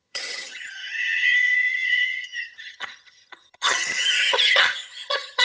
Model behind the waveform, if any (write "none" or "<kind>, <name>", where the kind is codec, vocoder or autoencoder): vocoder, HiFi-GAN